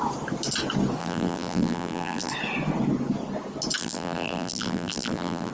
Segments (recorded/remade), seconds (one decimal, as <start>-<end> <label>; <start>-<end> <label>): 0.0-1.0 recorded; 1.0-2.3 remade; 2.3-3.8 recorded; 3.8-5.5 remade